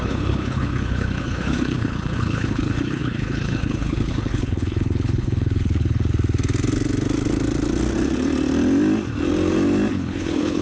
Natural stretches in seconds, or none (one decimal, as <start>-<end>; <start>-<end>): 6.1-9.9